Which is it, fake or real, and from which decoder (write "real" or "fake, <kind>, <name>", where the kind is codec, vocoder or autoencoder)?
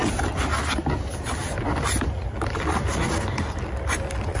real